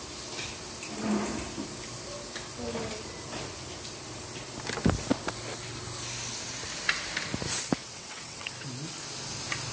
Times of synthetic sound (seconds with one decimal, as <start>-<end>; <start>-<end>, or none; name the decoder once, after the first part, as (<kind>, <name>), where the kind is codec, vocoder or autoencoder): 7.8-8.5 (vocoder, WaveNeXt)

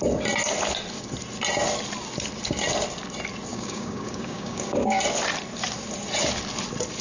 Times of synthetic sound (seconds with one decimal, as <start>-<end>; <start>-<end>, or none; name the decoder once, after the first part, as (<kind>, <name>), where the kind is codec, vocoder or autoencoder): 3.5-5.0 (codec, DAC)

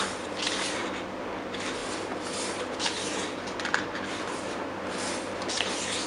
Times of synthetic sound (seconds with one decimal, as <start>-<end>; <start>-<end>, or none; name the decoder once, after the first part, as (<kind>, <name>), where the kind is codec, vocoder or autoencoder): none

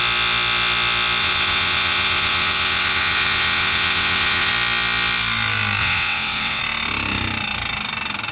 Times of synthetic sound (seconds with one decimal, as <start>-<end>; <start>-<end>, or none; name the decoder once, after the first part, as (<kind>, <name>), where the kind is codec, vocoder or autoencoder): 1.2-4.5 (vocoder, WaveNeXt); 5.8-6.6

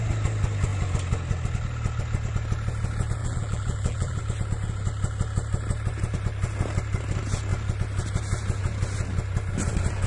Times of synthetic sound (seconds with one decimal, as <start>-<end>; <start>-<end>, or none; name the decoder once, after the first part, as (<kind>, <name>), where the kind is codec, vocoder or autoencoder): 3.2-4.2 (vocoder, BigVGAN v2)

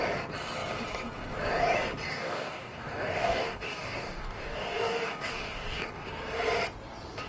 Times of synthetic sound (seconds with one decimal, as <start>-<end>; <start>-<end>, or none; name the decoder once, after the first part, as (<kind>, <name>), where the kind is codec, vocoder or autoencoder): 2.1-5.9 (codec, DAC)

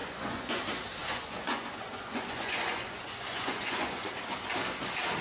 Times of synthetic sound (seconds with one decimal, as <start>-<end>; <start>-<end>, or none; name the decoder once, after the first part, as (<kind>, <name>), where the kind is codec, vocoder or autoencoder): 0.0-0.6 (vocoder, Vocos); 1.0-4.1